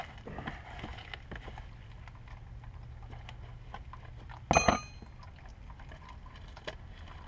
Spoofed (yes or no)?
no